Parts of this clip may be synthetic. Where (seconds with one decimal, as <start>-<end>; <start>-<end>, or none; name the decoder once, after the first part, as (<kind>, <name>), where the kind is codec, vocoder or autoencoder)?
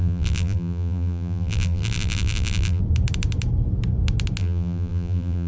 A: 0.0-2.8 (vocoder, BigVGAN v2); 4.4-5.5